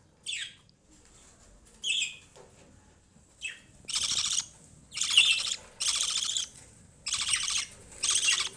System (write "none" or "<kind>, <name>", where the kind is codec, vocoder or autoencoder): none